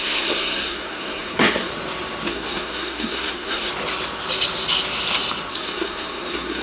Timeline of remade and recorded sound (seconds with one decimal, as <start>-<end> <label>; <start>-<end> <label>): 0.0-1.7 remade; 1.7-2.3 recorded; 2.3-3.7 remade; 3.7-5.5 recorded; 5.5-6.6 remade